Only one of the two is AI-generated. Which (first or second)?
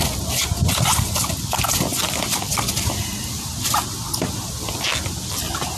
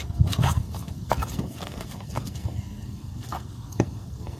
second